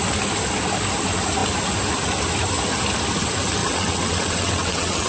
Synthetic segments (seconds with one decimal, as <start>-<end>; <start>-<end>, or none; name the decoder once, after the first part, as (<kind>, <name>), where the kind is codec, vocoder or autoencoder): 3.6-5.1 (vocoder, WaveNeXt)